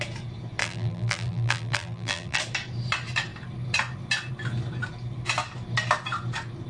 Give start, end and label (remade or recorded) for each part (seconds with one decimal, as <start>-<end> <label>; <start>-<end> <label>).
0.0-0.6 recorded; 0.6-2.4 remade; 2.4-6.7 recorded